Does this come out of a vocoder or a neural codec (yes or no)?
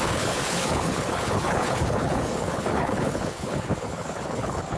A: yes